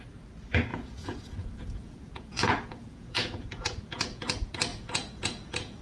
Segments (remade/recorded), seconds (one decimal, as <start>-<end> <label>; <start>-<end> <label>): 0.0-0.7 recorded; 0.7-4.2 remade; 4.2-4.7 recorded; 4.7-5.8 remade